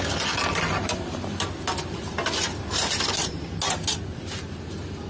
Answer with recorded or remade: recorded